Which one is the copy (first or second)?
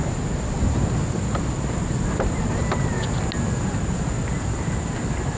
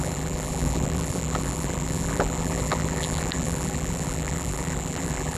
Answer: second